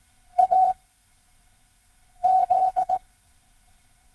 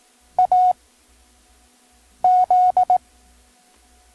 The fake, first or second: first